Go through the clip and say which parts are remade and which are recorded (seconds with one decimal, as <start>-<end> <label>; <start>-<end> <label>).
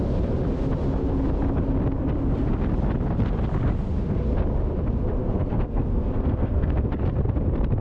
0.0-5.2 recorded; 5.2-6.9 remade; 6.9-7.8 recorded